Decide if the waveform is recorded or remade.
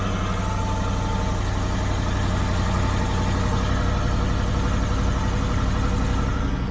recorded